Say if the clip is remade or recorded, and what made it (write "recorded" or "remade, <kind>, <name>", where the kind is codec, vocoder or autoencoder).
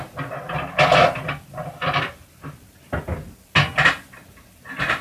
recorded